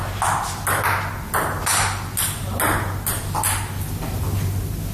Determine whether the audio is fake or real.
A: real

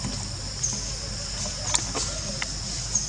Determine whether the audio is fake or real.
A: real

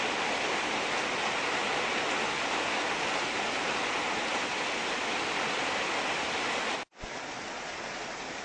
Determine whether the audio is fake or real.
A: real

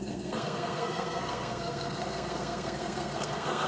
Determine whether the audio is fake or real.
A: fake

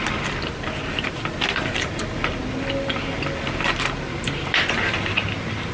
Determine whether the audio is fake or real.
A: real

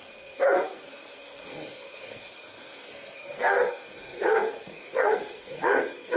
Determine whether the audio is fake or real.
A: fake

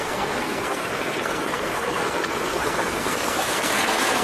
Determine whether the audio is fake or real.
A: fake